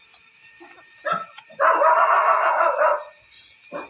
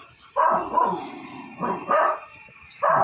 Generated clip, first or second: second